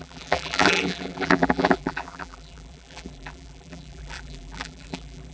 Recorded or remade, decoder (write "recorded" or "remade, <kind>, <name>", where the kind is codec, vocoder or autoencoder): remade, vocoder, BigVGAN v2